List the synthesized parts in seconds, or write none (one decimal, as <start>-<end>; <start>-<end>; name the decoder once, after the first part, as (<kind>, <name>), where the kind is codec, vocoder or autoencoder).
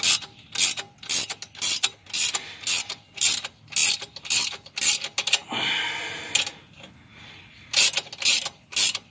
none